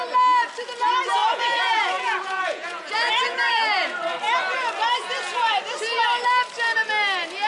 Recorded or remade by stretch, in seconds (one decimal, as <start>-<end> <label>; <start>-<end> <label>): 0.0-1.2 recorded; 1.2-3.5 remade; 3.5-5.0 recorded; 5.0-5.6 remade; 5.6-7.5 recorded